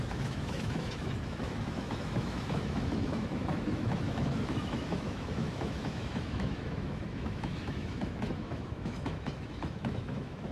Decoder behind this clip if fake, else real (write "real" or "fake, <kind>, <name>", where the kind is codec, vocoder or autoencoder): fake, autoencoder, DAC-VAE